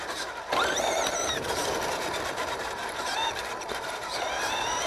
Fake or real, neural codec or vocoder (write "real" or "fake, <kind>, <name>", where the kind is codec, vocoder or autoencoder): fake, vocoder, BigVGAN v2